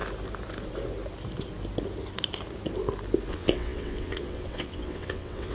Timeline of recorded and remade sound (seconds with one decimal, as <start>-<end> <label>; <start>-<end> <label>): 0.0-3.3 recorded; 3.3-5.5 remade